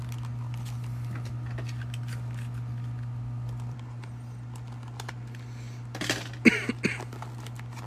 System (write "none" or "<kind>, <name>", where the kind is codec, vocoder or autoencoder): none